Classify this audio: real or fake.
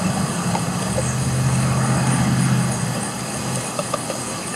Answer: fake